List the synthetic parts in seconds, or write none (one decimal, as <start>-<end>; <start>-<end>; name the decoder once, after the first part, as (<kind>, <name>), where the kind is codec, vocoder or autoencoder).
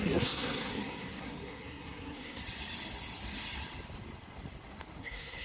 0.0-2.4 (codec, SNAC); 5.0-5.4